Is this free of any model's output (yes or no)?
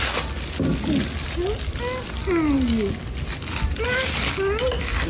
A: yes